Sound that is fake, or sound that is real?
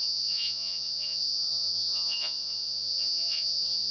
fake